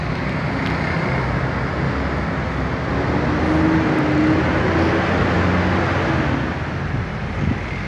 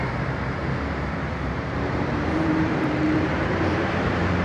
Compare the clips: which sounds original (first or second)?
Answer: first